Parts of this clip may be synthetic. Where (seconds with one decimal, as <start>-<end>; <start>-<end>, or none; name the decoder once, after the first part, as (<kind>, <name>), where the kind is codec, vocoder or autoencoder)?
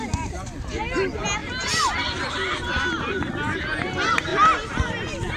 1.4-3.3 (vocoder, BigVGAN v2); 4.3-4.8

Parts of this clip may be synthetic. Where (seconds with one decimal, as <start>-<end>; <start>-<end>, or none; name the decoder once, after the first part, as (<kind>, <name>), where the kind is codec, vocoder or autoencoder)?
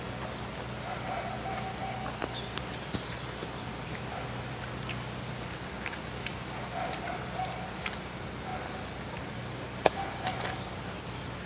none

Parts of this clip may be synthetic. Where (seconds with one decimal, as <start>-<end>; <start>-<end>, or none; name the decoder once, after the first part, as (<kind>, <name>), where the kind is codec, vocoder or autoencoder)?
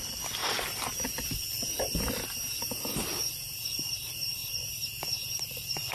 4.4-5.4 (vocoder, BigVGAN v2)